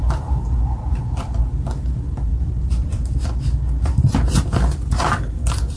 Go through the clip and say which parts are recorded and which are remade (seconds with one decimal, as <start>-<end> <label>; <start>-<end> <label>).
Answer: 0.0-2.3 recorded; 2.3-3.2 remade; 3.2-5.8 recorded